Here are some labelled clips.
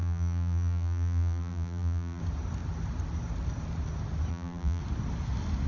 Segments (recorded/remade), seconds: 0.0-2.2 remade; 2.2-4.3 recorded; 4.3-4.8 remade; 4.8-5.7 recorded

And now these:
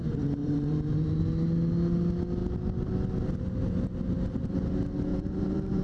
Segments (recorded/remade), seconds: 0.0-0.4 recorded; 0.4-1.2 remade; 1.2-5.1 recorded; 5.1-5.8 remade

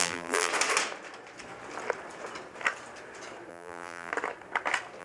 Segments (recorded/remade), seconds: 0.0-0.5 remade; 0.5-3.5 recorded; 3.5-4.1 remade; 4.1-5.0 recorded

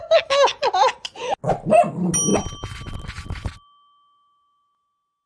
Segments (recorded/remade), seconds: 0.0-2.3 recorded; 2.3-2.9 remade; 2.9-5.3 recorded